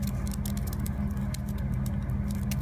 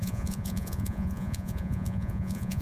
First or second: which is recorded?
first